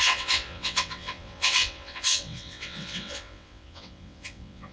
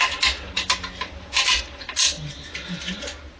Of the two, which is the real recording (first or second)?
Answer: second